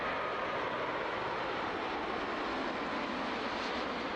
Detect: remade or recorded recorded